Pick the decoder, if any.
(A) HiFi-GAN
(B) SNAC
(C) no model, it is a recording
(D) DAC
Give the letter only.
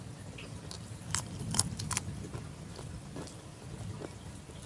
C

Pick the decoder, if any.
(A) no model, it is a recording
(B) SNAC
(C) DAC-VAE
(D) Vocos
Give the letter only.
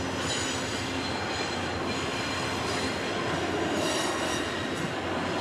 A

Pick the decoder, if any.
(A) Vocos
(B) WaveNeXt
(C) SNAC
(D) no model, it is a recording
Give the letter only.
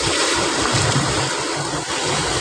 D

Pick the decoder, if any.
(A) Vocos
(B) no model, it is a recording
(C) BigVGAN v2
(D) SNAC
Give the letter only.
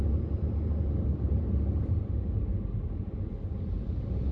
B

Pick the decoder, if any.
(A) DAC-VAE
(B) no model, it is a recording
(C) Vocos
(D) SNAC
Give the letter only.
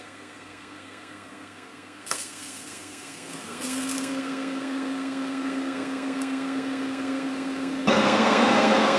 D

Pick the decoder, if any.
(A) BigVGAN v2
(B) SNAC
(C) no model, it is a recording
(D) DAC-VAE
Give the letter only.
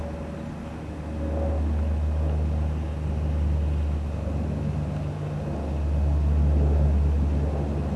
C